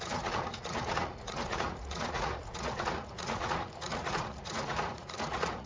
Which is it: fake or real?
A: fake